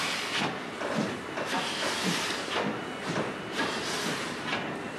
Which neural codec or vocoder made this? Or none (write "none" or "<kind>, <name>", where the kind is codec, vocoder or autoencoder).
none